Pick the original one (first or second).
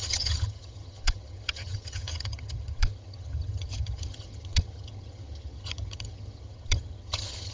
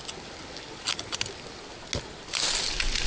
second